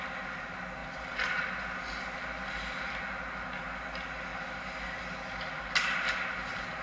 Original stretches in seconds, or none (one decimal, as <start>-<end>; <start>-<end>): 0.0-6.8